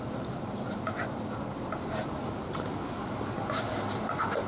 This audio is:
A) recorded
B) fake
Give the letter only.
A